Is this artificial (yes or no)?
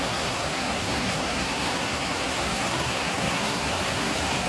yes